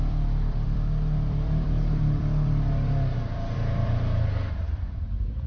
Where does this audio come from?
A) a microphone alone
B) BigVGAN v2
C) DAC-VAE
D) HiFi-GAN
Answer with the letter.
B